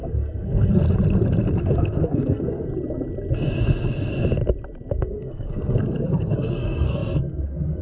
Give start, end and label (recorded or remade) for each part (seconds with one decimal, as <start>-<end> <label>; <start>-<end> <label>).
0.0-0.8 remade; 0.8-1.6 recorded; 1.6-2.7 remade; 2.7-4.9 recorded; 4.9-7.8 remade